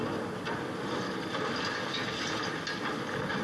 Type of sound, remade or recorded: recorded